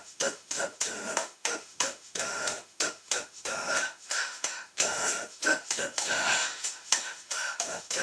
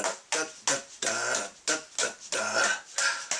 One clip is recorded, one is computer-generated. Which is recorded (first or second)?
second